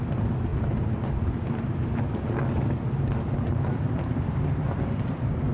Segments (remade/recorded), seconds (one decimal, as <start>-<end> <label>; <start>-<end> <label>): 0.0-5.5 recorded